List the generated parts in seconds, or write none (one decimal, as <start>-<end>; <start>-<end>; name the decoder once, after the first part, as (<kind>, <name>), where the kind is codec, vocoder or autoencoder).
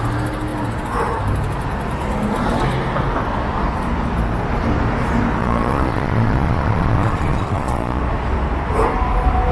5.4-8.0 (vocoder, Vocos)